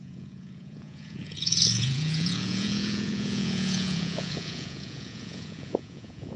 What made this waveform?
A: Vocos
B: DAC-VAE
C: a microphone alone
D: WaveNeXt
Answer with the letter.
A